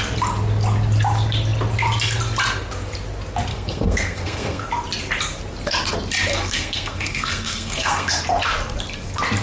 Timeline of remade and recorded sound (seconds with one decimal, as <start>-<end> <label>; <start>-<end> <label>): 0.0-3.5 recorded; 3.5-4.7 remade; 4.7-6.3 recorded; 6.3-8.1 remade; 8.1-9.4 recorded